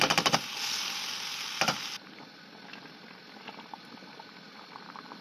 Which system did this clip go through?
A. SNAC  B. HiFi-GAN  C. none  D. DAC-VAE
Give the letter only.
C